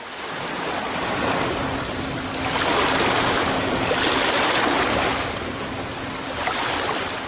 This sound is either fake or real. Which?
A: real